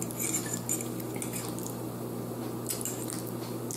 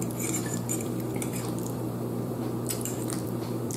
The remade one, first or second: second